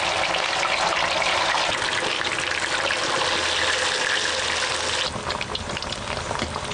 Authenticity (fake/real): real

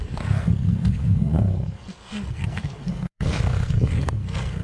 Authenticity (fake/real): fake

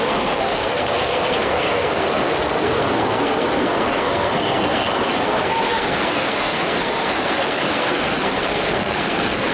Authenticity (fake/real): fake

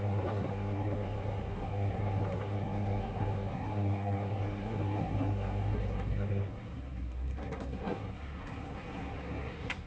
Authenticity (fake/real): fake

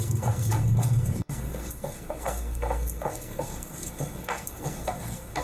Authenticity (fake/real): fake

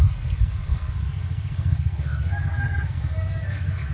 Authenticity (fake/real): fake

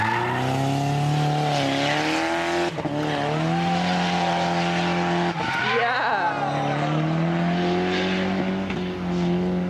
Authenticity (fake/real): real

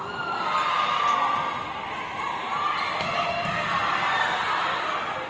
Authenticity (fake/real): real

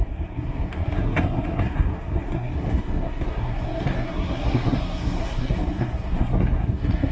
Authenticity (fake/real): fake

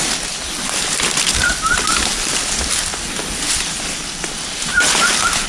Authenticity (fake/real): real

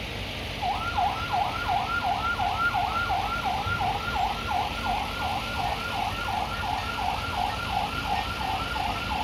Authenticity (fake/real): real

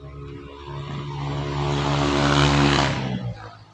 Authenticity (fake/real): real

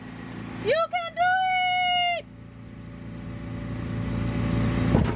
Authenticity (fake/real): real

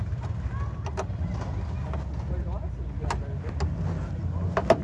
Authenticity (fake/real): real